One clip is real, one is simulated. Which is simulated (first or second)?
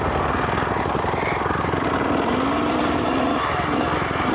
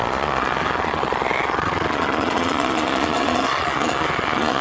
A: second